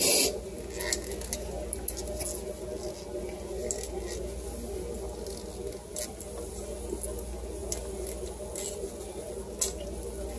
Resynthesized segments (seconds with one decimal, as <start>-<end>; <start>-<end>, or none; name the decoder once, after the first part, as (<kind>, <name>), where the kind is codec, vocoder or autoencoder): none